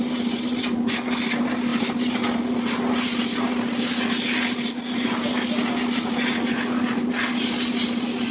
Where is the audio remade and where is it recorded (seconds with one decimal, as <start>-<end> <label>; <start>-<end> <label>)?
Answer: 0.0-8.3 recorded